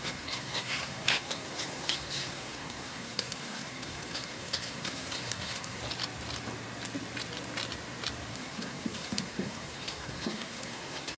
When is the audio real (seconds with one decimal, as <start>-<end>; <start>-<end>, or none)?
5.8-8.3